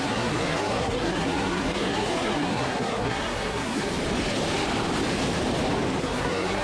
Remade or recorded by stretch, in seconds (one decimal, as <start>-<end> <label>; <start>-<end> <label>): 0.0-3.9 remade; 3.9-6.0 recorded; 6.0-6.6 remade